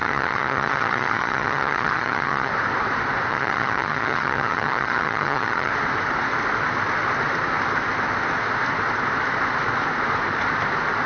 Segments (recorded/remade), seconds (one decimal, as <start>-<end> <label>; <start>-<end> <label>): 0.0-2.5 remade; 2.5-3.3 recorded; 3.3-5.7 remade; 5.7-11.1 recorded